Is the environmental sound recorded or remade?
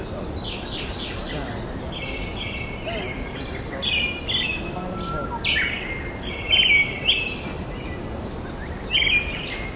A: recorded